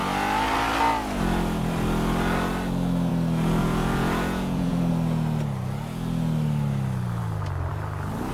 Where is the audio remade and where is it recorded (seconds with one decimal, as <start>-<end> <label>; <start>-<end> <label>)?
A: 0.0-3.6 recorded; 3.6-4.9 remade; 4.9-8.3 recorded